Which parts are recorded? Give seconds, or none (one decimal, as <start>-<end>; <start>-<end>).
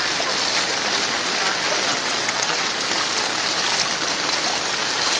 0.0-1.9; 2.7-5.2